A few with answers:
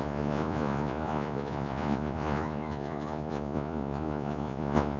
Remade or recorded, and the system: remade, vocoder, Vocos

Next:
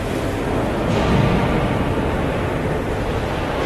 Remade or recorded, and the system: recorded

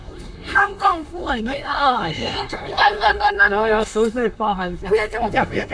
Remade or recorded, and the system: remade, codec, SNAC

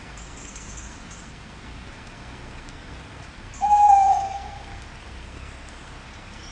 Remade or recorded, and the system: remade, codec, SNAC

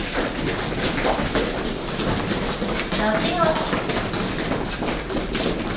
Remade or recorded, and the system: recorded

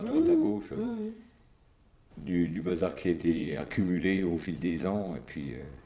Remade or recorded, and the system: remade, vocoder, Vocos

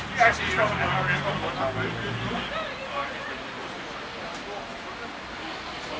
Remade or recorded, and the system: recorded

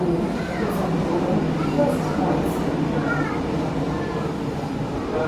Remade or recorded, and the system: recorded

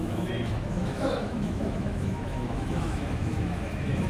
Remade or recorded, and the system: remade, autoencoder, DAC-VAE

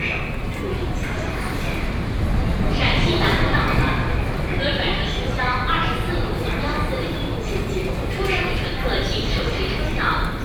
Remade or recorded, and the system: remade, vocoder, BigVGAN v2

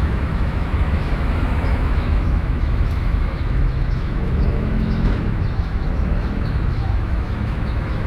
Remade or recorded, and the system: remade, autoencoder, DAC-VAE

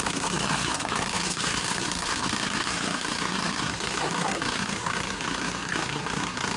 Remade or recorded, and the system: remade, codec, SNAC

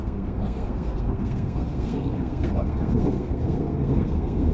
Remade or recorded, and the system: remade, codec, SNAC